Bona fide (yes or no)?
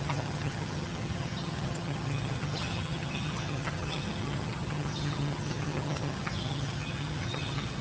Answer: no